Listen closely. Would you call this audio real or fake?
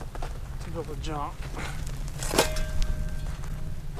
real